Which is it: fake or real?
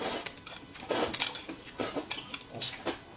real